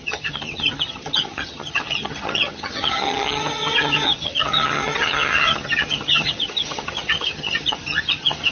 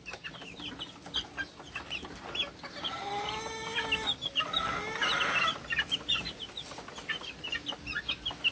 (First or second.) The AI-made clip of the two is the first